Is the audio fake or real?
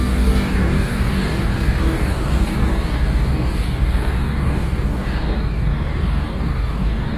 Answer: fake